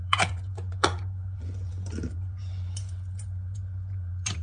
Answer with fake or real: fake